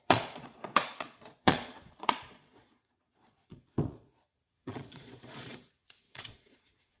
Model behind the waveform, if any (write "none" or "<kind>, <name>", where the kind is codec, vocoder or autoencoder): vocoder, Vocos